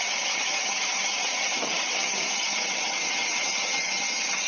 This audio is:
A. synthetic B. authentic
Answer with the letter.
A